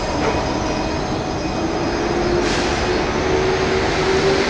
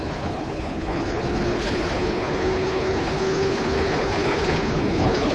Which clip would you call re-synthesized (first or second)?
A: second